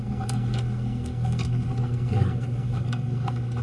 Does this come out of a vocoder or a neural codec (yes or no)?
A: yes